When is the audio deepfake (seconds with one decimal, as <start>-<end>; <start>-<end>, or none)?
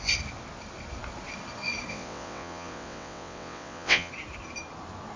1.9-4.1